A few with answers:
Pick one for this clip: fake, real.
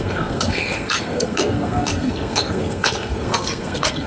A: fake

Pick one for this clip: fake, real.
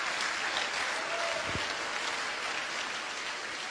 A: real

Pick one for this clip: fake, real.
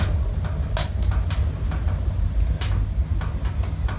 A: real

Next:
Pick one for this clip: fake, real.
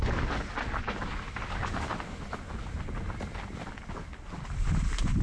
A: real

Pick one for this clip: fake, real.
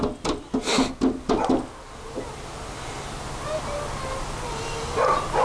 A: real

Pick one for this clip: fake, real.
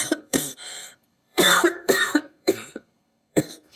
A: fake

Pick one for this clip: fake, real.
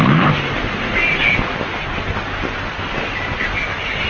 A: real